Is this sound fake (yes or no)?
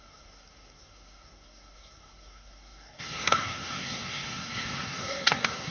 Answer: yes